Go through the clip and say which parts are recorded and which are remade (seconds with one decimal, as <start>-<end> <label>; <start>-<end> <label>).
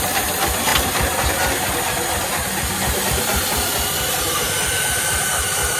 0.0-5.8 recorded